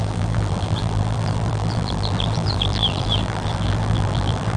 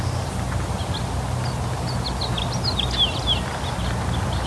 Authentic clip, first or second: second